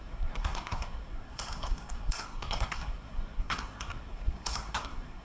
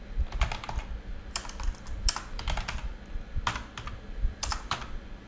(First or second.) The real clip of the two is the second